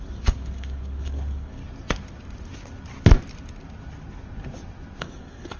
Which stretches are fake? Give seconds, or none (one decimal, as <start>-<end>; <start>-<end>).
0.0-1.6; 5.0-5.6